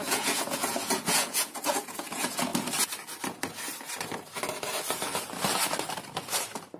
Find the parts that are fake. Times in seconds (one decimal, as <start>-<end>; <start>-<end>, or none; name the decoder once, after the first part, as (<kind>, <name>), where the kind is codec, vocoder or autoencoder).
0.0-2.5 (vocoder, Vocos)